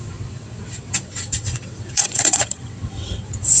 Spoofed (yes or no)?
yes